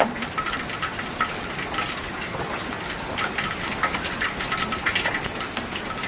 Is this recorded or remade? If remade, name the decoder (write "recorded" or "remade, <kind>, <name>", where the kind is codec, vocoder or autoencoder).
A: recorded